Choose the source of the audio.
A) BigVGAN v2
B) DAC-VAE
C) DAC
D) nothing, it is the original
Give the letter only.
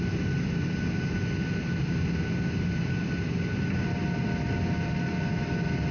D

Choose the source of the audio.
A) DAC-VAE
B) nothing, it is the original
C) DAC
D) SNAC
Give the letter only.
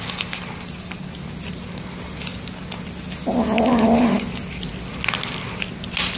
B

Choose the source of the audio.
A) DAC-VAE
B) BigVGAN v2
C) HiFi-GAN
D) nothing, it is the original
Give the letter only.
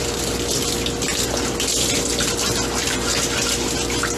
D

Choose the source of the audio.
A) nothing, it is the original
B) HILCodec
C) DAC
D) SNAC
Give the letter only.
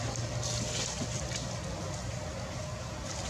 A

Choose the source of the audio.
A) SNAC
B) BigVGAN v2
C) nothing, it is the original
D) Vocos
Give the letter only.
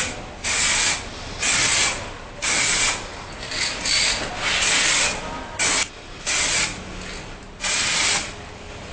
C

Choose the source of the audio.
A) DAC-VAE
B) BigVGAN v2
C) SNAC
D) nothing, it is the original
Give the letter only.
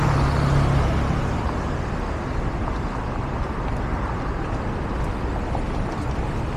D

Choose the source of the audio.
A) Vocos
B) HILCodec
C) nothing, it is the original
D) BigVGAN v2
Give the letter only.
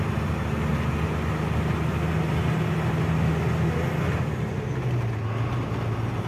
C